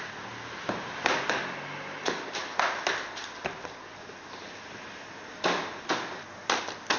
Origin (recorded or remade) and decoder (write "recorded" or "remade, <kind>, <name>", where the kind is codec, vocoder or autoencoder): recorded